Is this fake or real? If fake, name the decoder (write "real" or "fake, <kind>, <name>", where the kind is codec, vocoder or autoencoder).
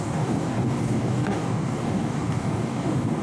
fake, codec, DAC